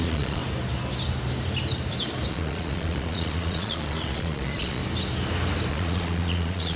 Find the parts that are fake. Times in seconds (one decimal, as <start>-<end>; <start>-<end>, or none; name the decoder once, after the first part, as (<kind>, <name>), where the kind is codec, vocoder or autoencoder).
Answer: 0.0-0.4 (vocoder, Vocos); 2.3-4.8; 5.7-6.8